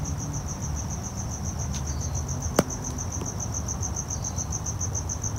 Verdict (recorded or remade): recorded